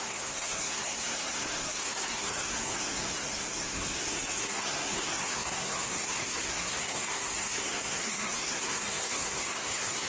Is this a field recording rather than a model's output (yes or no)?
no